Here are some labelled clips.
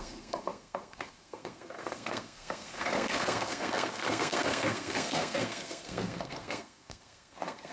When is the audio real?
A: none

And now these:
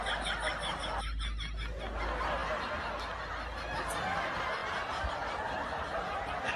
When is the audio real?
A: 0.0-6.6

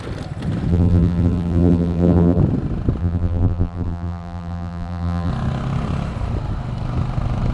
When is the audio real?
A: 0.0-0.7; 2.4-3.0; 5.3-7.5

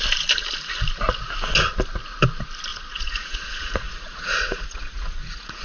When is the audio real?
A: 0.0-2.7

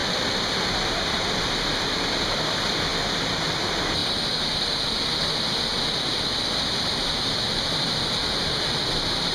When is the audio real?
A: 2.9-3.6; 4.0-6.0

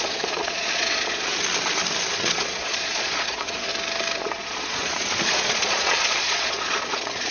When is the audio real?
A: 1.3-2.1; 3.7-4.2